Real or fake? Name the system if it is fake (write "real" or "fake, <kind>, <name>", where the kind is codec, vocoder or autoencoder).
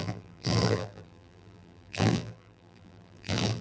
fake, vocoder, BigVGAN v2